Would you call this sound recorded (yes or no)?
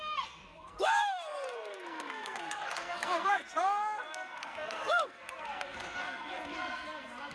no